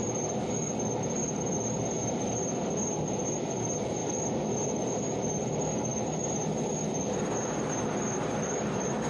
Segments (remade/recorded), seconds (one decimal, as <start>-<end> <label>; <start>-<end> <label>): 0.0-4.0 recorded; 4.0-4.7 remade; 4.7-5.9 recorded; 5.9-6.5 remade; 6.5-9.1 recorded

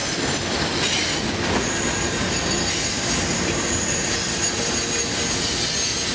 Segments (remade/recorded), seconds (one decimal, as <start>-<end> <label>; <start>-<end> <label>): 0.0-3.7 remade; 3.7-6.1 recorded

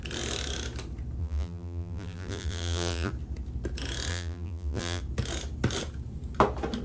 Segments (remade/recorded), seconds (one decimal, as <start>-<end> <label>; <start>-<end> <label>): 0.0-1.2 recorded; 1.2-3.1 remade; 3.1-4.1 recorded; 4.1-5.0 remade; 5.0-6.8 recorded

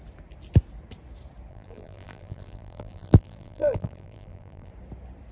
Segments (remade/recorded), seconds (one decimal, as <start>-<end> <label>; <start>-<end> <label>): 0.0-1.5 recorded; 1.5-4.7 remade; 4.7-5.3 recorded